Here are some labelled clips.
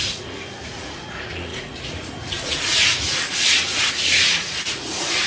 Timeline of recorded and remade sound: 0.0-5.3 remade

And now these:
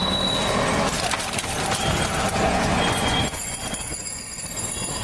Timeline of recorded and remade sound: 0.0-2.3 recorded; 2.3-4.5 remade; 4.5-5.0 recorded

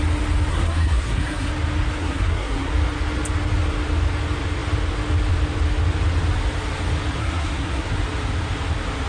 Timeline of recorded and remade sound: 0.0-0.5 recorded; 0.5-1.5 remade; 1.5-2.0 recorded; 2.0-2.7 remade; 2.7-7.2 recorded; 7.2-7.9 remade; 7.9-9.1 recorded

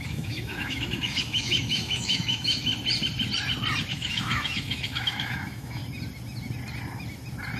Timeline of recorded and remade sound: 0.0-2.7 remade; 2.7-3.9 recorded; 3.9-5.8 remade; 5.8-7.6 recorded

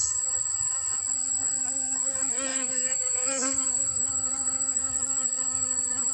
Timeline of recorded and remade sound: 0.0-2.5 recorded; 2.5-4.9 remade; 4.9-6.1 recorded

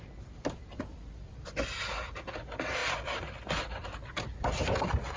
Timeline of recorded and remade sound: 0.0-5.2 recorded